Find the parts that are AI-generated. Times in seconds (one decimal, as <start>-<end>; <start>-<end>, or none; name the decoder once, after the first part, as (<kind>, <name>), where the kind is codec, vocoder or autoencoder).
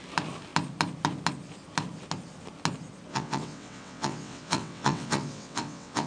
3.1-6.1 (vocoder, WaveNeXt)